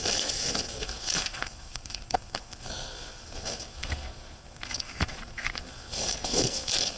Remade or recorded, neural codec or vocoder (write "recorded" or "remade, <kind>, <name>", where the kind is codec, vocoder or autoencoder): remade, codec, SNAC